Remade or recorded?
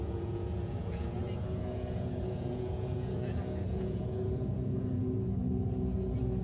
remade